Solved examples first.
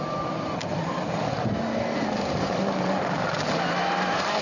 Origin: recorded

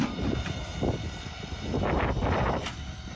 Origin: recorded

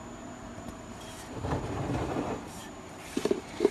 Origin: remade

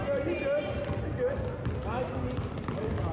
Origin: recorded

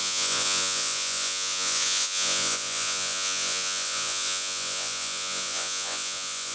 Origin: remade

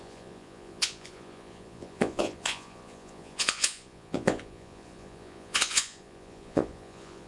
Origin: remade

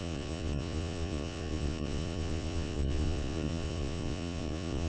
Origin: remade